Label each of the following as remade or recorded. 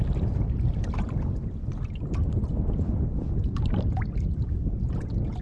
recorded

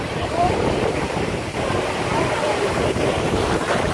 remade